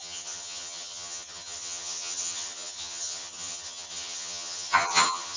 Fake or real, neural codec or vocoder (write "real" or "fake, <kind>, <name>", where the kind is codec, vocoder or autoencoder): fake, vocoder, HiFi-GAN